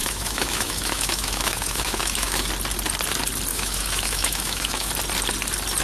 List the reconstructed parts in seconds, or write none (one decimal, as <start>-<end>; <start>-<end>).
0.0-2.5; 3.5-4.9